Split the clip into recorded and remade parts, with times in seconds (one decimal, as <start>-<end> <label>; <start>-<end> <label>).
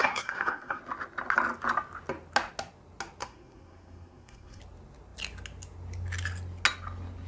0.0-0.8 remade; 0.8-3.2 recorded; 3.2-4.6 remade; 4.6-7.3 recorded